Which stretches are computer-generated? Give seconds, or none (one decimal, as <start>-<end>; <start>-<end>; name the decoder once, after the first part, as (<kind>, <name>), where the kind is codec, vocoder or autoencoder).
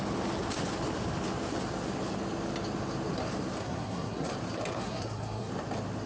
3.6-4.3 (codec, SNAC); 4.7-5.5